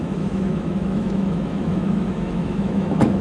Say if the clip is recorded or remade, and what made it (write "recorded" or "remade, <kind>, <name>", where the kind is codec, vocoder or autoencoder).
remade, autoencoder, DAC-VAE